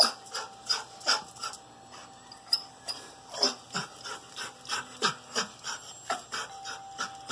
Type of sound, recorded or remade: recorded